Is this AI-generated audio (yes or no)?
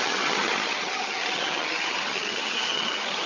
yes